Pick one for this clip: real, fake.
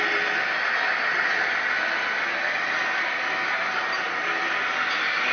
real